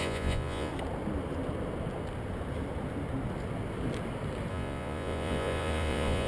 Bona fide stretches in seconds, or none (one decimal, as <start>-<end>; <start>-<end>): 0.7-4.5